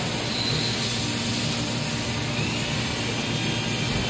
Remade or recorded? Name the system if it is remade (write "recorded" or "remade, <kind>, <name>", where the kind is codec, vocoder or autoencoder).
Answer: recorded